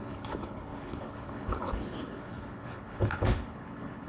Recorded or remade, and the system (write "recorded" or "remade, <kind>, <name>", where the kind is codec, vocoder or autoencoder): remade, codec, HILCodec